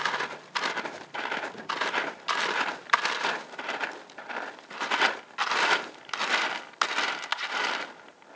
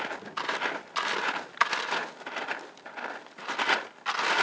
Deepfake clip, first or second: first